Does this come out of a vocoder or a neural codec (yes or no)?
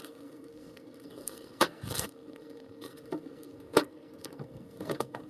yes